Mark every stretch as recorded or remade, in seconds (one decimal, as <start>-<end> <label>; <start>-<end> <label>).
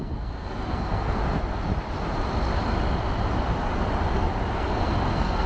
0.0-1.2 remade; 1.2-4.5 recorded; 4.5-5.5 remade